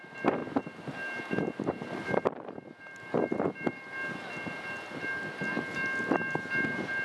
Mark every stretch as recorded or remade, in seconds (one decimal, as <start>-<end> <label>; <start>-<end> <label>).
0.0-7.0 recorded